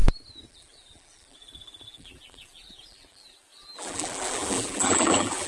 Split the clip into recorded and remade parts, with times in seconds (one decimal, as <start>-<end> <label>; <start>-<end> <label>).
0.0-0.5 recorded; 0.5-5.5 remade